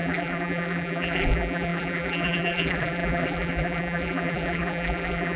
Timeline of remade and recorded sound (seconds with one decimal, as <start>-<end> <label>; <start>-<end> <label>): 0.0-5.4 remade